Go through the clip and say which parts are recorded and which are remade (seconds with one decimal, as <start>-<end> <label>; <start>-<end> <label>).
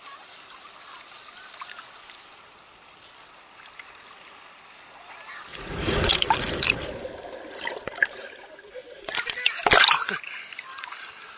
0.0-5.5 recorded; 5.5-6.3 remade; 6.3-11.4 recorded